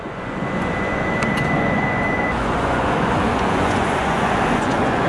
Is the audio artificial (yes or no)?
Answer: yes